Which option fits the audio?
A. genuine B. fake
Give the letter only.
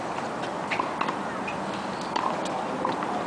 A